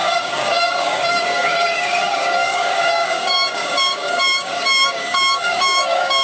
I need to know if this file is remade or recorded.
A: remade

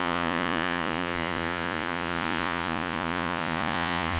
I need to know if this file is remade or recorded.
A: remade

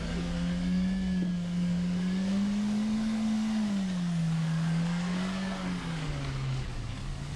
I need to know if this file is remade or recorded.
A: remade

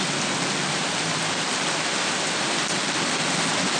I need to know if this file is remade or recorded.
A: recorded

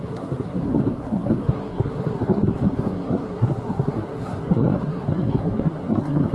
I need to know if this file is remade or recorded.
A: remade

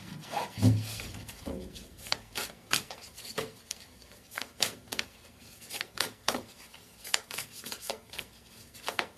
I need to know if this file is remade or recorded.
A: remade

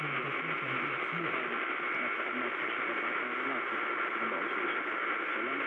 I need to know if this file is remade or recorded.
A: recorded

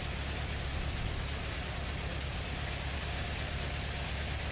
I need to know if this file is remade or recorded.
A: recorded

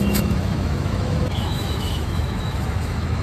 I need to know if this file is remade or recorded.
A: remade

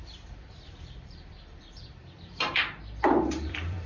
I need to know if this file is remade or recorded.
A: remade